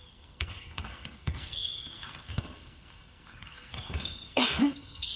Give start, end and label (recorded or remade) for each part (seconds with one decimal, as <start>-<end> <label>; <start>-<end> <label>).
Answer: 0.0-5.2 remade